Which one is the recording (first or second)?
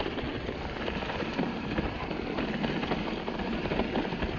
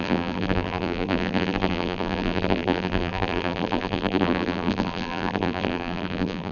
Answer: first